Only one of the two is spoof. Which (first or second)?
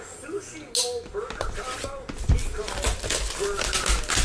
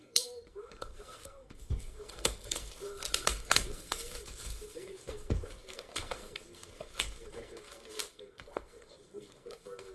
second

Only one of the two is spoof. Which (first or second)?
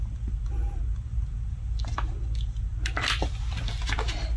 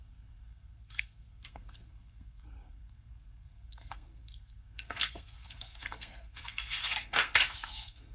second